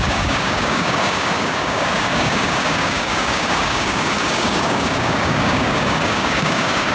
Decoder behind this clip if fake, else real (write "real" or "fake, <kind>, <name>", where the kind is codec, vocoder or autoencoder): fake, codec, DAC